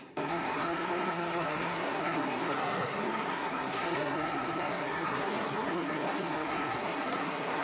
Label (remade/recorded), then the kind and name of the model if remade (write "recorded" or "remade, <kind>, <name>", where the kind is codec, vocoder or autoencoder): remade, codec, SNAC